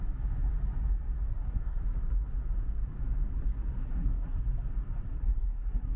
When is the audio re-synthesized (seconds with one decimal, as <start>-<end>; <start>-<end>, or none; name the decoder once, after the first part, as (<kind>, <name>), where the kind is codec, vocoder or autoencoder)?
1.3-1.8 (codec, SNAC); 3.8-4.4; 5.1-6.0